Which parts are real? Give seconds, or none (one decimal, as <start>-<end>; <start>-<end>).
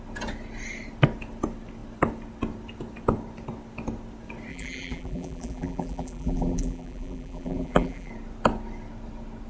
0.0-4.5; 8.1-9.5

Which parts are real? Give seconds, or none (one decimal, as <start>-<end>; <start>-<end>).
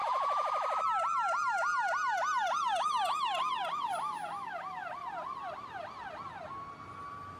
0.8-7.4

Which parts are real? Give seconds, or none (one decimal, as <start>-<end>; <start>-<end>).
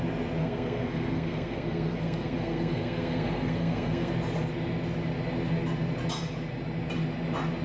0.0-0.4; 4.1-7.6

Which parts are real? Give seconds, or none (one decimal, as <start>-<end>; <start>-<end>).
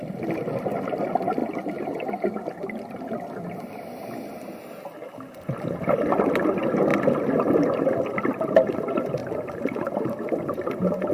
0.0-9.2